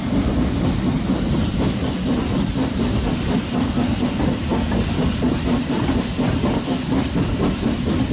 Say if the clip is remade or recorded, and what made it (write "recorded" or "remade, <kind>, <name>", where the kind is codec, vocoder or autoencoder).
recorded